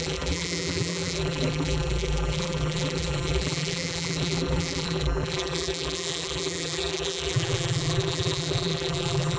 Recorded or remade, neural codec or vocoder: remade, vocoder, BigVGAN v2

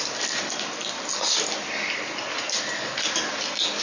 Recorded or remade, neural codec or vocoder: recorded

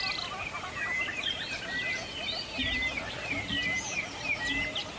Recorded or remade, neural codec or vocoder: recorded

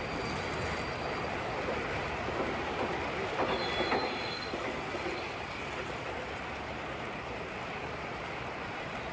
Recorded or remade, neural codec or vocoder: recorded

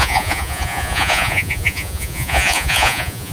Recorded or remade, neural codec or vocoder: remade, vocoder, Vocos